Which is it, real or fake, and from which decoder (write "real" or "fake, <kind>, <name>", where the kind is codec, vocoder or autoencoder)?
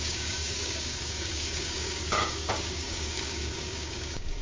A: fake, codec, DAC